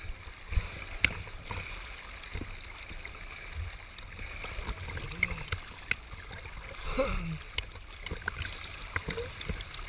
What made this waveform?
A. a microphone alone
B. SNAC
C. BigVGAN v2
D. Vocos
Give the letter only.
A